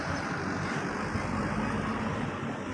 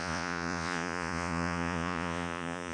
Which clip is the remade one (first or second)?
second